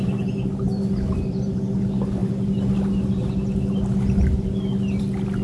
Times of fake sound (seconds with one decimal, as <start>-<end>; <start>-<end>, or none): none